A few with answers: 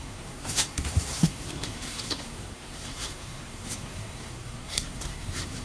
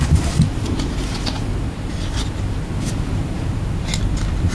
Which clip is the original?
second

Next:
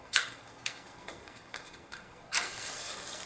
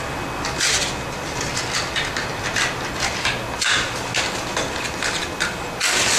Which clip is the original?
second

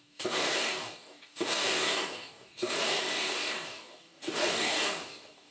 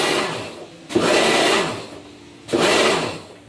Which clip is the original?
second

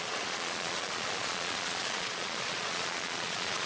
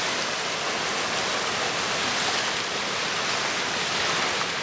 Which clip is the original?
second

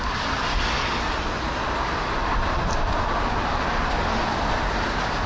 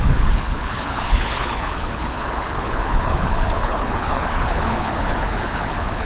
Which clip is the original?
first